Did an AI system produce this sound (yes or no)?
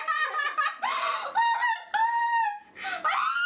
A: no